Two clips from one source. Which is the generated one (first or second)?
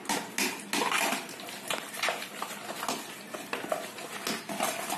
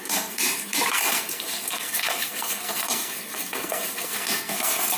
second